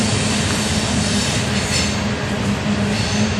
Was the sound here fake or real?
real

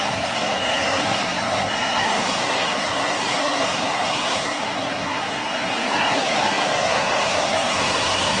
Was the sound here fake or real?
fake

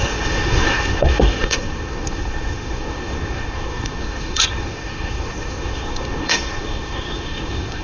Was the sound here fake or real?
fake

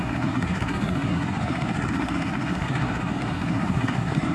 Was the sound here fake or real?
fake